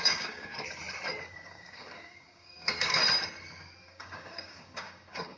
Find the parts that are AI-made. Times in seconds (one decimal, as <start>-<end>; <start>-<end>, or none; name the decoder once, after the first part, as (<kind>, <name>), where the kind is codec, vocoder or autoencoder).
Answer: 0.0-0.5 (codec, DAC); 1.2-3.0; 3.8-5.4